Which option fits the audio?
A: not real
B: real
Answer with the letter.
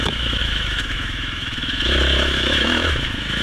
A